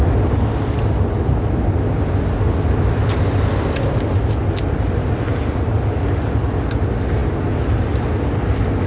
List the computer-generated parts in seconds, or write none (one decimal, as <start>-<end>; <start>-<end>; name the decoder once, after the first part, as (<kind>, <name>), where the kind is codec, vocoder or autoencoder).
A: none